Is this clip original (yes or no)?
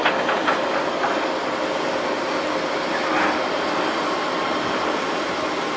yes